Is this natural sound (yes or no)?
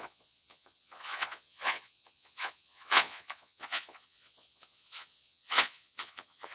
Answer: no